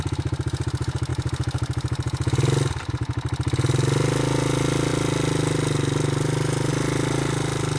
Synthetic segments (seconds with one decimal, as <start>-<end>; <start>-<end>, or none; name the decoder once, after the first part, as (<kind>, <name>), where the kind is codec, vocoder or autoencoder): none